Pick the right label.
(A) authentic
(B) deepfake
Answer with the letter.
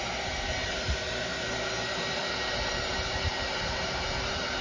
B